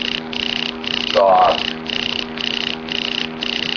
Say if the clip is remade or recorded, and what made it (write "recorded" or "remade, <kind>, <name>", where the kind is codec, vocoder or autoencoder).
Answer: recorded